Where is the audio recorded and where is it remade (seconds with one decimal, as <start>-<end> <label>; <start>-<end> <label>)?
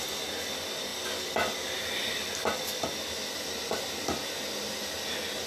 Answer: 0.0-5.5 recorded